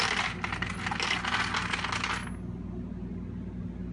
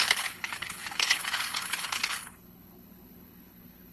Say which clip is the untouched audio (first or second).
first